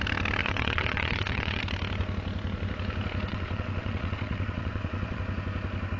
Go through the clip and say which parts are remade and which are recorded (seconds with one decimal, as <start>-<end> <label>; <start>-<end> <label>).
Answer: 0.0-0.4 recorded; 0.4-1.6 remade; 1.6-3.3 recorded; 3.3-5.2 remade; 5.2-6.0 recorded